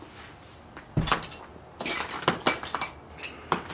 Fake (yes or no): no